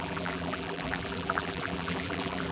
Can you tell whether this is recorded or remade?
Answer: remade